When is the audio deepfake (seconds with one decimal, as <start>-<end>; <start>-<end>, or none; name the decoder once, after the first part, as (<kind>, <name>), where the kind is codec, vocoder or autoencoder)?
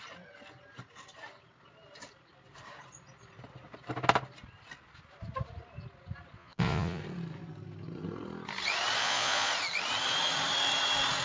6.4-7.0 (vocoder, Vocos); 9.0-9.5